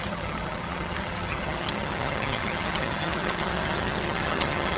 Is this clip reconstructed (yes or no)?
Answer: yes